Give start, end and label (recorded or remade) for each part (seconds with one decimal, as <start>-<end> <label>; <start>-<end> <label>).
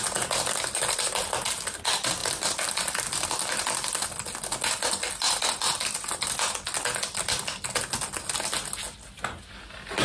0.0-10.0 recorded